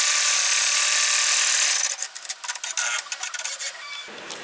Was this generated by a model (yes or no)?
no